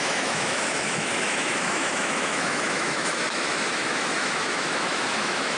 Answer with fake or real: fake